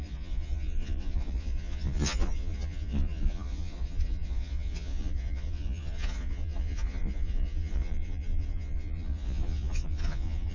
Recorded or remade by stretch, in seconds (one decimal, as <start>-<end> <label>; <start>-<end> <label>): 0.0-10.5 remade